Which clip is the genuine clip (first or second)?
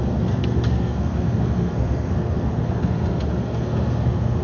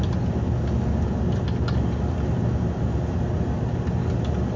second